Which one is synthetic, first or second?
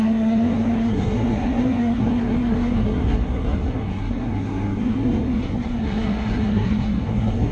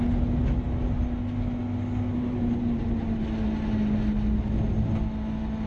first